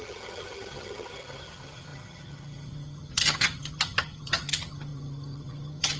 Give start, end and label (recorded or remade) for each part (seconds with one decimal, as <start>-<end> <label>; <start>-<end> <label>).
0.0-6.0 remade